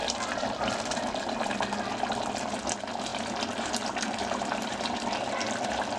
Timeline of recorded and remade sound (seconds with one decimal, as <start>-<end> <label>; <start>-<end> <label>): 0.0-1.1 remade; 1.1-6.0 recorded